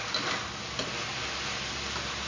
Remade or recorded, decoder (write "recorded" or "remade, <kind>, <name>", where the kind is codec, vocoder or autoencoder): recorded